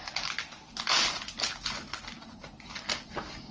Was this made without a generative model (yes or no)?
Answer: yes